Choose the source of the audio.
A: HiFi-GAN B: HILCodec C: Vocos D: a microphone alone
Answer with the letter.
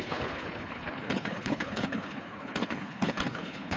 B